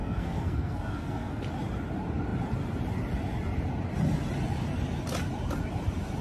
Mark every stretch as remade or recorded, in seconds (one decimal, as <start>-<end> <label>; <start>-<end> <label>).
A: 0.0-1.4 remade; 1.4-6.2 recorded